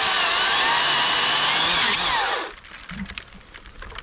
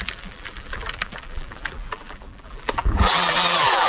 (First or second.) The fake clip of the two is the second